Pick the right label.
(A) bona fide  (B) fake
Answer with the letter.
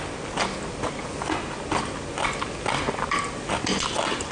A